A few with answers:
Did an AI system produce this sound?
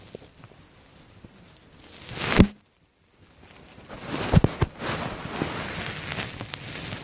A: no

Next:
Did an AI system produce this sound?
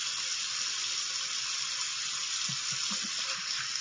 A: no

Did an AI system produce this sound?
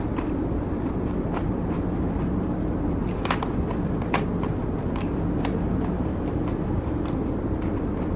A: yes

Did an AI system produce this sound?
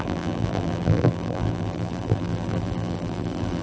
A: yes